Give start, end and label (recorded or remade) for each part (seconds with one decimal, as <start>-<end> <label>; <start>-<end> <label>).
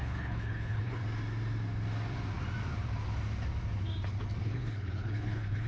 0.0-1.0 remade; 1.0-4.4 recorded; 4.4-5.7 remade